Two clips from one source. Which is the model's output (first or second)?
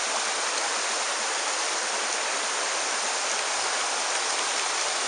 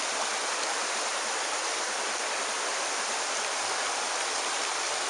second